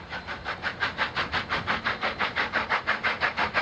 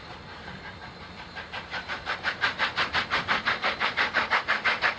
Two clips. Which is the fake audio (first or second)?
second